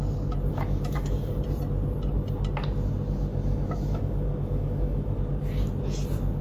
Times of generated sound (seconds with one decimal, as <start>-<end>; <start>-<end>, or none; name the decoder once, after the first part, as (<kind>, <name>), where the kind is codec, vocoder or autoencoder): 0.5-1.3 (autoencoder, DAC-VAE); 3.3-5.2